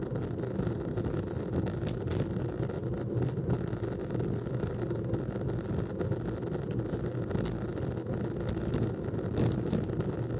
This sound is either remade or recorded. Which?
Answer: recorded